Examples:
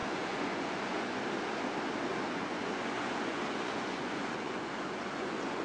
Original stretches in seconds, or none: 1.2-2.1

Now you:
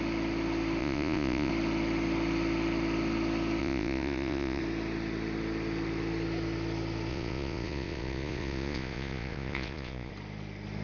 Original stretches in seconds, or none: 0.0-0.8; 1.5-3.6; 4.6-7.1; 10.1-10.8